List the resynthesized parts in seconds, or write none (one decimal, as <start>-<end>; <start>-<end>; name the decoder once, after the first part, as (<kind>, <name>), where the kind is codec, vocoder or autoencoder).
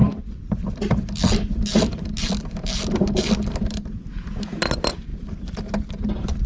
0.0-3.3 (vocoder, BigVGAN v2); 5.1-5.6